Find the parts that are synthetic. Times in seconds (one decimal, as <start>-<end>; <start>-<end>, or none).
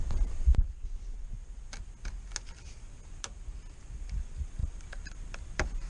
none